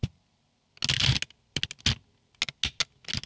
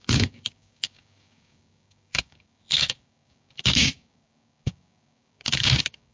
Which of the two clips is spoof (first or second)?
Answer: second